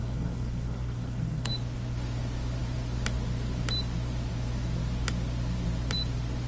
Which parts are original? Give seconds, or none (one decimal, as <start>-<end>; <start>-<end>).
1.5-6.5